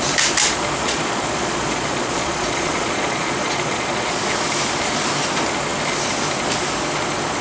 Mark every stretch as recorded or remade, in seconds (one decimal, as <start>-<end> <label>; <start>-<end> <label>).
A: 0.0-0.8 recorded; 0.8-4.1 remade; 4.1-7.4 recorded